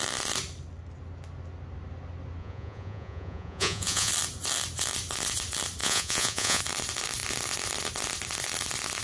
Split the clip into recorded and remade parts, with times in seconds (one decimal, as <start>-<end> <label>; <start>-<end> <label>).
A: 0.0-2.4 recorded; 2.4-4.1 remade; 4.1-5.8 recorded; 5.8-6.6 remade; 6.6-9.0 recorded